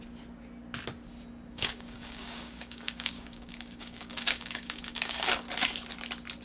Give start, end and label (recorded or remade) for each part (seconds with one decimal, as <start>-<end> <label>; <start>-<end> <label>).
0.0-1.5 recorded; 1.5-5.3 remade; 5.3-6.4 recorded